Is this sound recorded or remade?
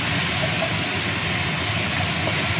recorded